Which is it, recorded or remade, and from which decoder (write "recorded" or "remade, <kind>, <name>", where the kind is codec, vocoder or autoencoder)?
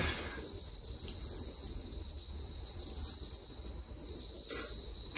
recorded